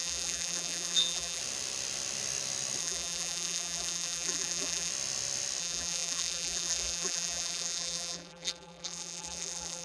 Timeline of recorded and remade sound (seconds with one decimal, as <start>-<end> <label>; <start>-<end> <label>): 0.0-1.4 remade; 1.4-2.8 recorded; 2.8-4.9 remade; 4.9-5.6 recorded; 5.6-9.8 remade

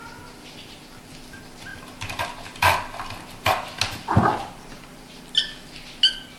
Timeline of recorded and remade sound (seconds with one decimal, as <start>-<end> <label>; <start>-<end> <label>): 0.0-6.4 recorded

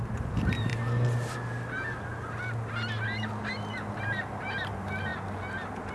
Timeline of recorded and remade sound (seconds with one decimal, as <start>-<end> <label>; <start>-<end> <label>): 0.0-0.7 remade; 0.7-4.0 recorded; 4.0-5.1 remade; 5.1-5.9 recorded